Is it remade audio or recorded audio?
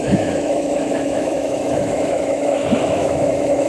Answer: remade